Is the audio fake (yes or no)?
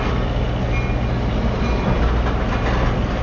no